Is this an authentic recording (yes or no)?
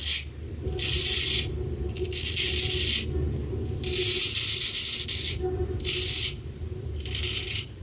yes